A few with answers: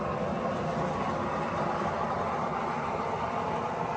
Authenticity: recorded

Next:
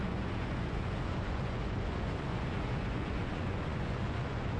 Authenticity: remade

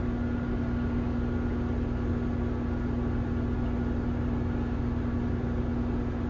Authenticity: recorded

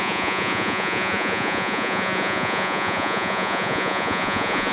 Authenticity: remade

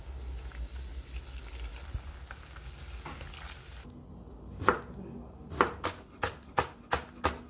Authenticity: recorded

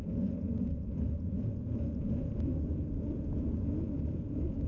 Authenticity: remade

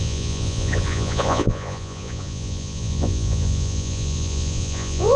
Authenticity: remade